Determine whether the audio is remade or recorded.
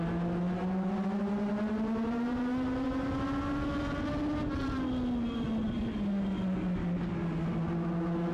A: recorded